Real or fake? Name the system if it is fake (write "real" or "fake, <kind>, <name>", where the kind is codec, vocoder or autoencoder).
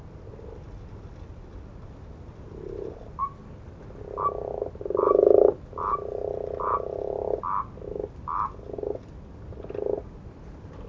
real